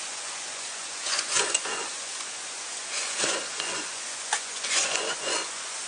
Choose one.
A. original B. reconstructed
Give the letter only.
B